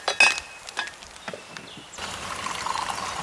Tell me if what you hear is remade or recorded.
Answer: recorded